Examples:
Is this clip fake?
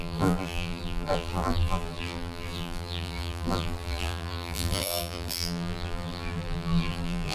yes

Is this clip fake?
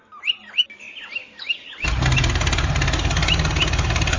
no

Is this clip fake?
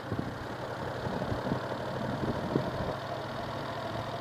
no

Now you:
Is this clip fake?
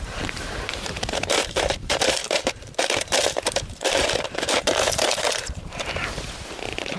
yes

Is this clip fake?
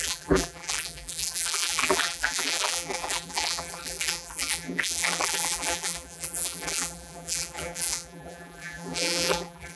yes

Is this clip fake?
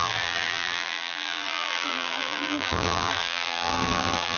yes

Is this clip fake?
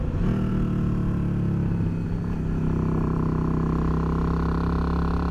no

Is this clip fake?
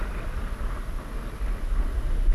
no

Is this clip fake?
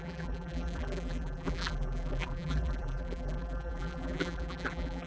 yes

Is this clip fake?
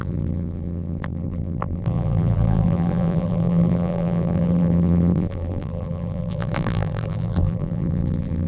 yes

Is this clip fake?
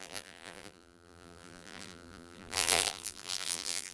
yes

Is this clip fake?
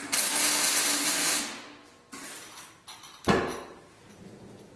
no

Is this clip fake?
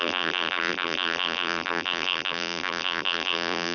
yes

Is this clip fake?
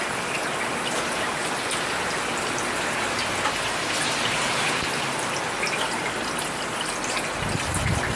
no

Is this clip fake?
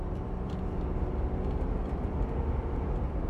no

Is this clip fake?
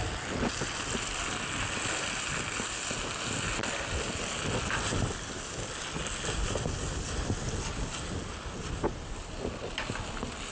no